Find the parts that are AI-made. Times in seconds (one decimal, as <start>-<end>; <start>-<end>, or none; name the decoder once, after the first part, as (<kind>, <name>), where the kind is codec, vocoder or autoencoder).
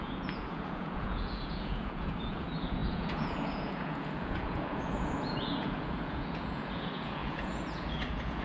0.0-8.4 (vocoder, Vocos)